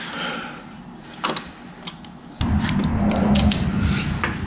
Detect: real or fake real